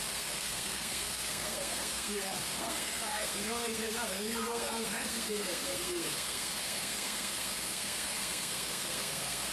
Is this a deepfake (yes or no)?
yes